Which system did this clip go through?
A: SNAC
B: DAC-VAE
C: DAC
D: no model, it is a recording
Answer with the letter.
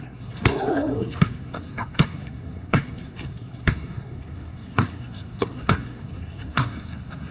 A